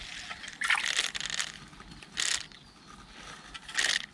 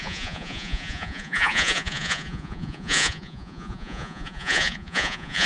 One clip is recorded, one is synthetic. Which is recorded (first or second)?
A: first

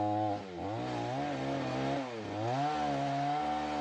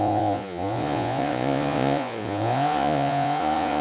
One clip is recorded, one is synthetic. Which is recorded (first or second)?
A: first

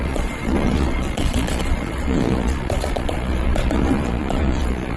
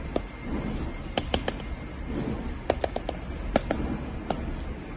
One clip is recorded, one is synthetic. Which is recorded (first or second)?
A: second